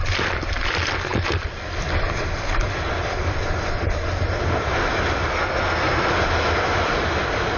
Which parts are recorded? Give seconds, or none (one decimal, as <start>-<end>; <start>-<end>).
0.0-5.3; 6.1-7.6